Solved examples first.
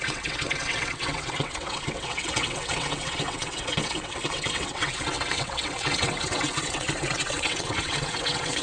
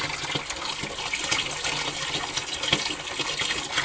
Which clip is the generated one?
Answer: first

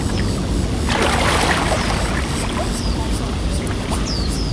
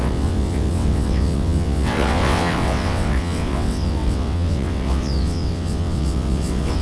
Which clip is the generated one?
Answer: second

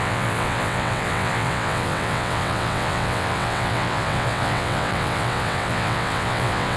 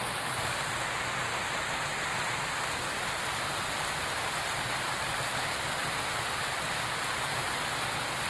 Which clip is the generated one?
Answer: first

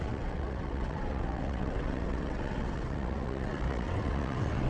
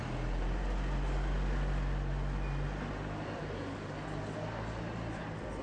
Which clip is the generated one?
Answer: first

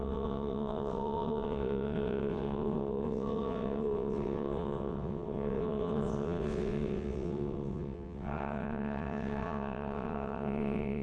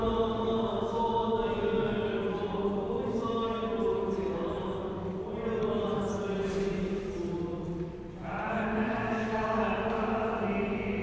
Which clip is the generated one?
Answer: first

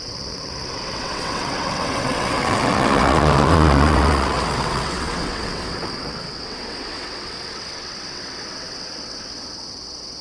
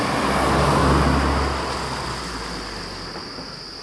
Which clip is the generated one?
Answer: first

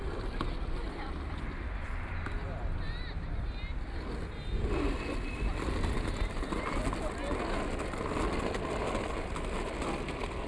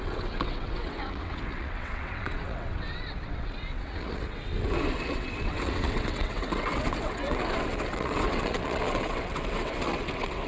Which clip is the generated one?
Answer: second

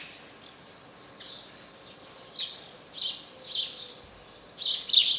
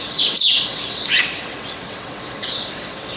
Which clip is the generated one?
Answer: second